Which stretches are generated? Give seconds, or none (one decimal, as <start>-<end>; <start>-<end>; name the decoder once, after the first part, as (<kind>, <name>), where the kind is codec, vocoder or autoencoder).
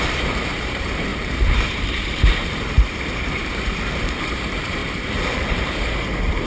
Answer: 0.0-6.5 (vocoder, BigVGAN v2)